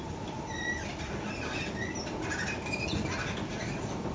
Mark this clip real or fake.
real